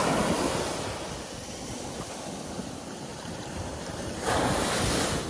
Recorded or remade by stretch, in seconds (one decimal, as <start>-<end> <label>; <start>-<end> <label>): 0.0-3.1 recorded; 3.1-4.7 remade; 4.7-5.3 recorded